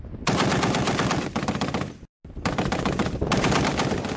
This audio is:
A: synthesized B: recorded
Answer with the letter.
B